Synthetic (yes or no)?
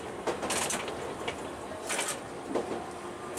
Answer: no